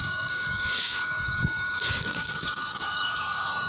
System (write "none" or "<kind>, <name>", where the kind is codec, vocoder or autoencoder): codec, DAC